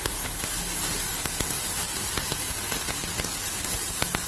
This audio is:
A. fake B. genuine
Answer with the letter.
B